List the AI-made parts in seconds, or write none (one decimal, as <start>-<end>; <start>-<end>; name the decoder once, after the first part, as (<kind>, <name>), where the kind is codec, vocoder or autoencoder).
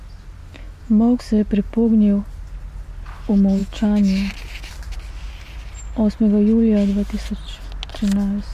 0.4-1.2 (autoencoder, DAC-VAE); 3.6-4.3